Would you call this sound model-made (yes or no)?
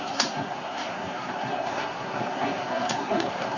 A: yes